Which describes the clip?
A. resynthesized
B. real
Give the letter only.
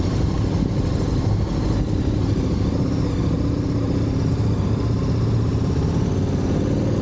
B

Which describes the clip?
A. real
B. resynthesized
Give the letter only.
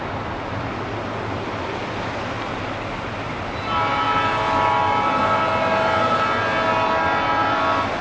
A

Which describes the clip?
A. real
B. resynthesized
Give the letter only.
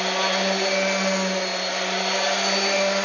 A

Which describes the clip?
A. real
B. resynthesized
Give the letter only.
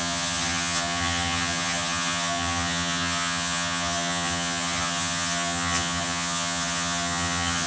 B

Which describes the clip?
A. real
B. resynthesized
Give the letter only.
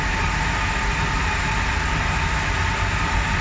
A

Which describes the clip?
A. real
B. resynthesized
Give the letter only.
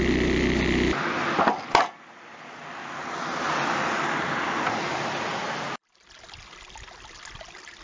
A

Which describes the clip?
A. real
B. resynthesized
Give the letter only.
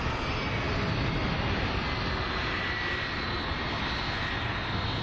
A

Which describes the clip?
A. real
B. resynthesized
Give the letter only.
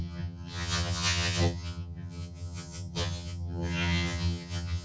B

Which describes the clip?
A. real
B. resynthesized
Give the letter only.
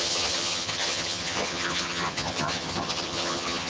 B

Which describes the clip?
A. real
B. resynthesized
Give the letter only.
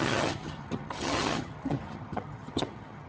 B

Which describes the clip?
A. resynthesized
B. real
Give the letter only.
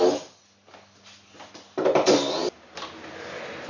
B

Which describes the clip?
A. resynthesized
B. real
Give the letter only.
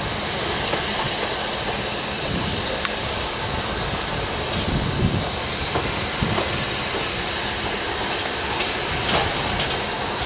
B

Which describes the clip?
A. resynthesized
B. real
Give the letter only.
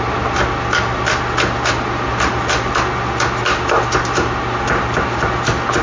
B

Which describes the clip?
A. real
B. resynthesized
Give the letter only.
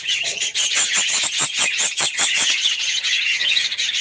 B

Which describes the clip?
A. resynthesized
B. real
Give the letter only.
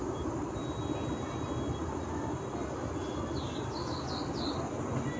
B